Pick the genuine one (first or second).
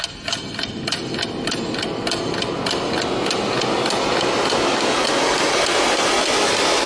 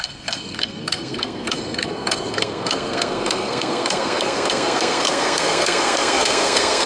first